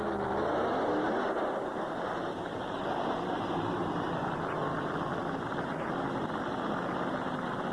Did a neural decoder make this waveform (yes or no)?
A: no